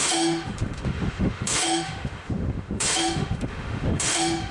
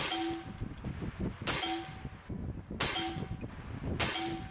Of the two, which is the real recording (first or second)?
second